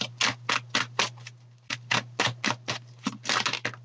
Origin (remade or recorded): recorded